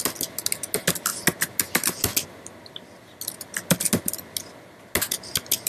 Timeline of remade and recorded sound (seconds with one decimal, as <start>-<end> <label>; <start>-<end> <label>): 0.0-5.7 recorded